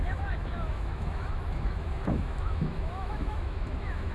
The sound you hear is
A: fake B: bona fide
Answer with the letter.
A